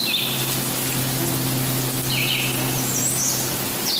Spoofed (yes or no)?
no